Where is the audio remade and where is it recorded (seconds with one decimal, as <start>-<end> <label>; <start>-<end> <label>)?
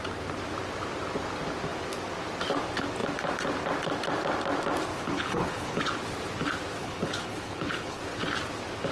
0.0-4.9 recorded; 4.9-5.8 remade; 5.8-6.8 recorded; 6.8-8.0 remade; 8.0-8.9 recorded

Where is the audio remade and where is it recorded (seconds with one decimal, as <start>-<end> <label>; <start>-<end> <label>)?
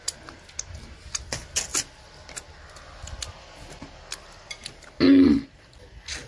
0.0-6.3 recorded